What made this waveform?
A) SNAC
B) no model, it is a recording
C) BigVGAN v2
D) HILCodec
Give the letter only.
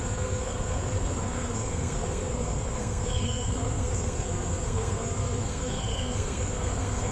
A